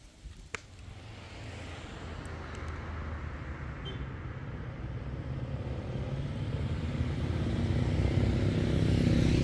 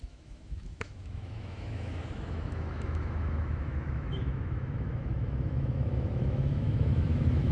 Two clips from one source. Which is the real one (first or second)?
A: first